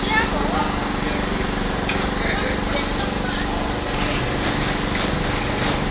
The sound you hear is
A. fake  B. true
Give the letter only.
B